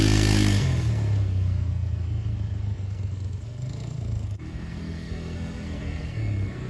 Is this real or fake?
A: fake